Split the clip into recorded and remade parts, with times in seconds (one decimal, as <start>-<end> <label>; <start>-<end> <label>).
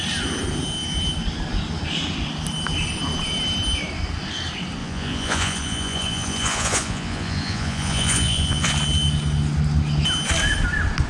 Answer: 0.0-4.8 recorded; 4.8-8.7 remade; 8.7-11.1 recorded